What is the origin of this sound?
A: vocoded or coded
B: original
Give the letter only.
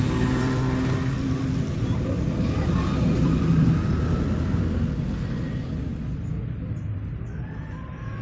B